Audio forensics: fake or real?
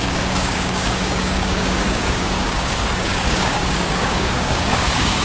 fake